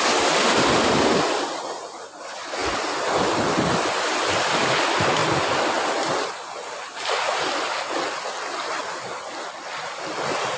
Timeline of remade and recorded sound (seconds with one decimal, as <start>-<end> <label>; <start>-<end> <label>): 0.0-10.6 recorded